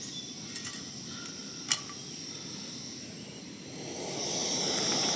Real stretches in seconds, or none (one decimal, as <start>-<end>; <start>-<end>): 0.0-5.2